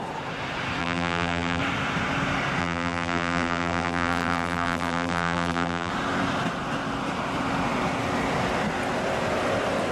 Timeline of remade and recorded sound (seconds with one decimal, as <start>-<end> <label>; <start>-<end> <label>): 0.0-0.8 recorded; 0.8-1.6 remade; 1.6-2.6 recorded; 2.6-5.9 remade; 5.9-9.9 recorded